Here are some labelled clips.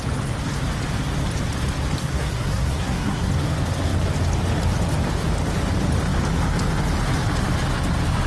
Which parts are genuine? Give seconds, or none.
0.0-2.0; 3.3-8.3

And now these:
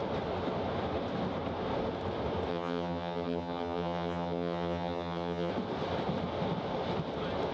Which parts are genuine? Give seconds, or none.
0.0-2.5; 5.5-7.5

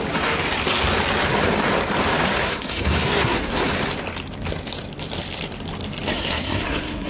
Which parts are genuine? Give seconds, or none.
0.0-2.4; 3.7-6.1

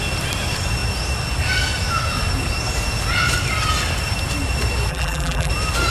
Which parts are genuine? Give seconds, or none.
0.0-4.9; 5.5-5.9

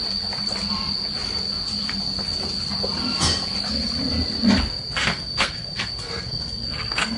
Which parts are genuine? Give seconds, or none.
0.0-5.1

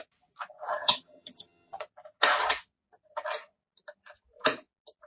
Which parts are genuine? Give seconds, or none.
0.0-0.7; 1.8-5.1

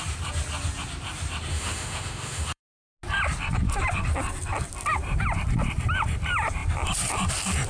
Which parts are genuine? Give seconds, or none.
0.0-1.5; 2.6-7.7

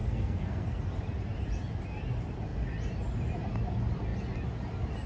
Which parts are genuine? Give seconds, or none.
0.8-5.1